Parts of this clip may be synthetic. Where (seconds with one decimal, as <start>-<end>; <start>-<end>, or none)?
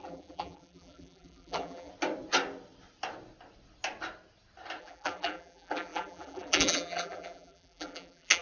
0.0-1.9; 4.8-8.4